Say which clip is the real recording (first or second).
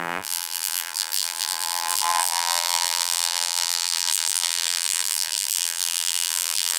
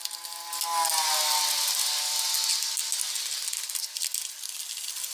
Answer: second